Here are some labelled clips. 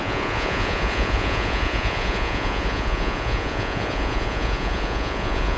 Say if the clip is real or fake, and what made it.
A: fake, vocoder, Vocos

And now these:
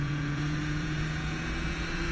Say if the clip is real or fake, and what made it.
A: fake, vocoder, Vocos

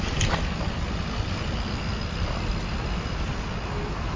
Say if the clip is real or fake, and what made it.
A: real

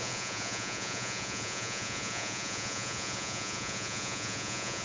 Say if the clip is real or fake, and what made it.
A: fake, vocoder, Vocos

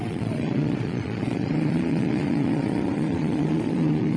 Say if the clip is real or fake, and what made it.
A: fake, vocoder, Vocos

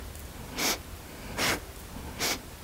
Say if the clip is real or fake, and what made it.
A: real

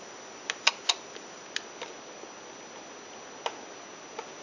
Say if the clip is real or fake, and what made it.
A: real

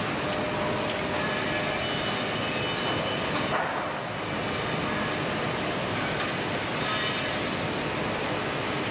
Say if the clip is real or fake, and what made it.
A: real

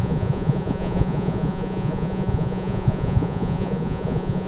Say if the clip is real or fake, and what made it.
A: fake, vocoder, Vocos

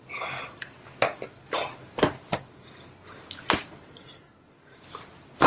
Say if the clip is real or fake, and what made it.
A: real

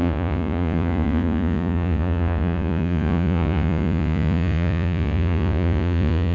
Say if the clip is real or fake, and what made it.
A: fake, vocoder, Vocos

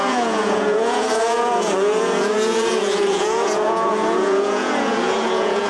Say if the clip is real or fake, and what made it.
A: fake, vocoder, Vocos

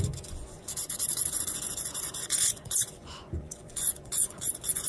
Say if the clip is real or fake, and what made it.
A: fake, vocoder, Vocos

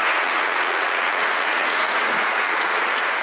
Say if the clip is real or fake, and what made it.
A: fake, vocoder, Vocos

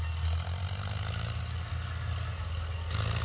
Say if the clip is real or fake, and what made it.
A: real